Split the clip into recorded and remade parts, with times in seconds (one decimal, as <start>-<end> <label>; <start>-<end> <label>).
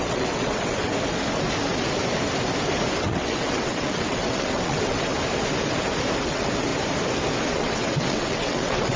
0.0-0.9 remade; 0.9-3.0 recorded; 3.0-5.1 remade; 5.1-6.2 recorded; 6.2-6.7 remade; 6.7-7.4 recorded; 7.4-9.0 remade